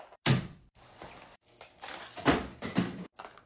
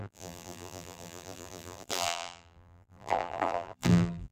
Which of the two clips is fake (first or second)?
second